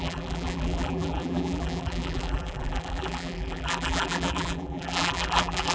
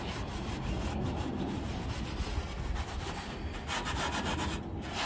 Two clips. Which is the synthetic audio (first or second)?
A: first